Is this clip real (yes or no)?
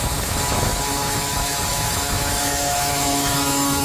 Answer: no